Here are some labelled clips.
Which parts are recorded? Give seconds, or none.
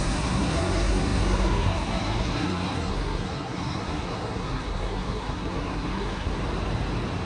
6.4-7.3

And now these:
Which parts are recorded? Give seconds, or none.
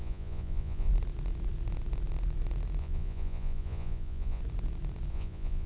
0.9-2.8; 4.4-5.1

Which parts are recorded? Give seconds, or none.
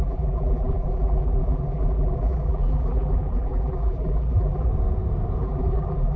4.7-5.4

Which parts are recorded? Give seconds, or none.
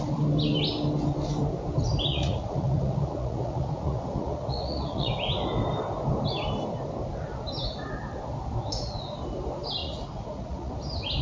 0.0-2.1; 5.1-9.8; 10.7-11.2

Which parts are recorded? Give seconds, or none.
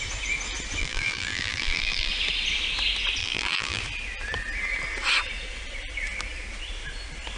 0.0-0.8; 2.1-3.2; 3.8-7.4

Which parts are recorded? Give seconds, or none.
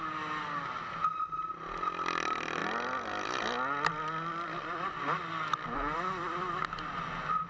0.0-7.5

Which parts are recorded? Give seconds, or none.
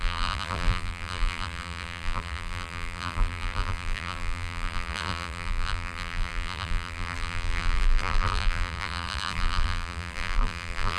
none